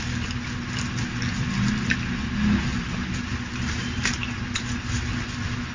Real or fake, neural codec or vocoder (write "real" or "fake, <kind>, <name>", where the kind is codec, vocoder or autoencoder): real